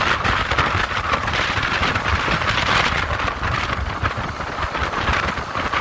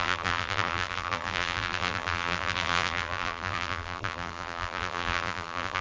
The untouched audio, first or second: first